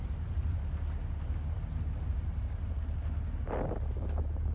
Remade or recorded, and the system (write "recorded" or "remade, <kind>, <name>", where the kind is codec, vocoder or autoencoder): recorded